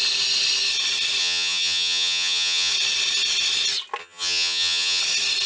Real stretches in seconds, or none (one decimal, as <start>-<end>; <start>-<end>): 0.0-1.2; 2.7-4.0; 5.0-5.5